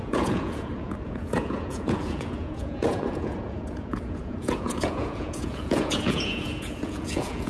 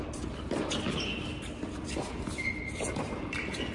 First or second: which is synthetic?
first